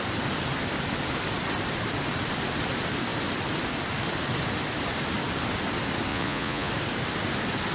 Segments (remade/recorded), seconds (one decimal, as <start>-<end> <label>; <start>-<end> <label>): 0.0-6.1 recorded; 6.1-6.7 remade; 6.7-7.7 recorded